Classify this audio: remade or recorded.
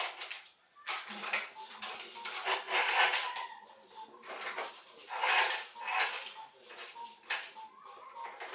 remade